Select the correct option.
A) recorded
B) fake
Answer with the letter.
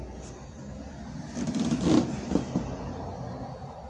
A